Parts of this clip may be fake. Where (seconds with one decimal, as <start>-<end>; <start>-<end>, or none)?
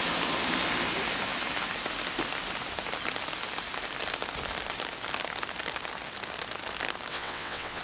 7.1-7.8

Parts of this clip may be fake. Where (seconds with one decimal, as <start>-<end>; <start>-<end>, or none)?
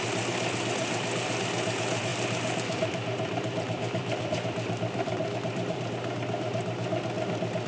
2.1-5.9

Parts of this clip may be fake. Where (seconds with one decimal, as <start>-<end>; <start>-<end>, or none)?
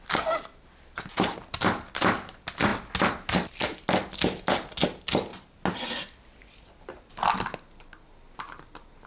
none